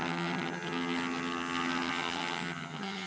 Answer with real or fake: fake